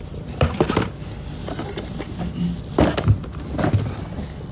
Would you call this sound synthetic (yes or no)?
no